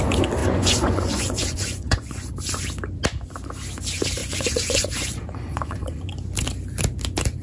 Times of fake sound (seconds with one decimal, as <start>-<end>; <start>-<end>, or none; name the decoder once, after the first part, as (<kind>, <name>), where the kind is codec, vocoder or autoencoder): 0.4-2.3 (vocoder, Vocos); 4.2-6.1